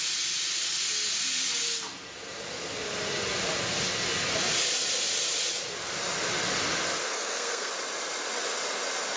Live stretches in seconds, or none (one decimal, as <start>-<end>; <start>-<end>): 0.0-7.0; 7.7-9.2